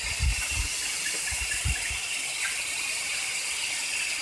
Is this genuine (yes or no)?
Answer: yes